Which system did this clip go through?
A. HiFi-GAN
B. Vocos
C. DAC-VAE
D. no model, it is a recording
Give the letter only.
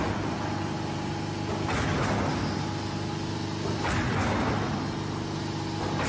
D